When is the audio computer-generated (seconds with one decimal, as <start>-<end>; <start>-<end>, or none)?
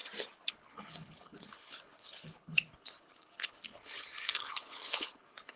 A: 0.5-5.6